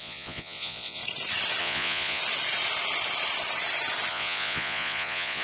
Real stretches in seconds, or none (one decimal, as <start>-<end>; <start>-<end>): 1.0-1.6; 2.2-4.1